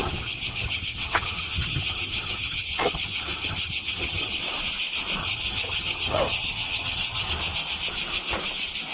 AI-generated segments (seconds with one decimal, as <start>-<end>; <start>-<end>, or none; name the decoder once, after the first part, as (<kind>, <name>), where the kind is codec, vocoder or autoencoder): 0.0-4.4 (vocoder, HiFi-GAN); 5.2-7.3